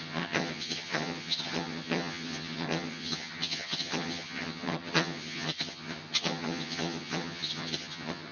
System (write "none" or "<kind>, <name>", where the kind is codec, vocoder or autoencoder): vocoder, HiFi-GAN